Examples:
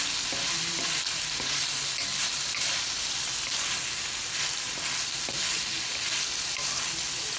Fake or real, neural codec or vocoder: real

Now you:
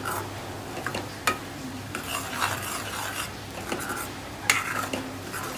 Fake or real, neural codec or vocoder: real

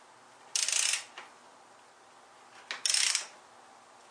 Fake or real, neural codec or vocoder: real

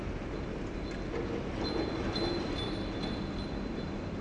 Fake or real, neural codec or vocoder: real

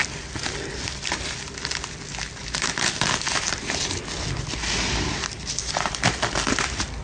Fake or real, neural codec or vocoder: real